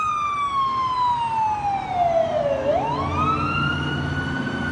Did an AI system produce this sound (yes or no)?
no